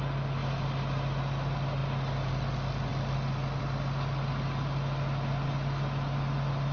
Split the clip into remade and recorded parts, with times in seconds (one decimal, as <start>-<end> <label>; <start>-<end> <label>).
0.0-6.7 recorded